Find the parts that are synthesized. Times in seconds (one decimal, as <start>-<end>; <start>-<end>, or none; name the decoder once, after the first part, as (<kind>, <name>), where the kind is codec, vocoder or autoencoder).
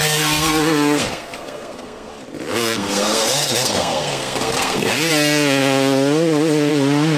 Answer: 0.0-2.1 (codec, SNAC); 2.5-5.1